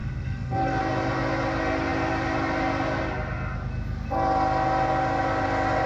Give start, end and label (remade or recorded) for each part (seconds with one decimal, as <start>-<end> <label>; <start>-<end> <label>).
0.0-0.8 remade; 0.8-5.9 recorded